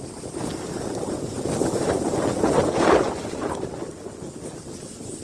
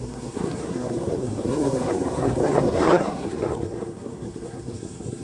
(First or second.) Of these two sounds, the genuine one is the first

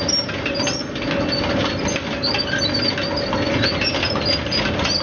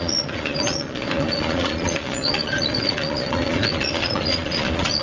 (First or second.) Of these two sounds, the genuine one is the first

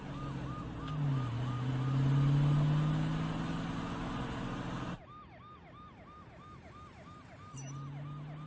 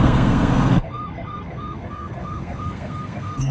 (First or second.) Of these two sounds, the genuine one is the first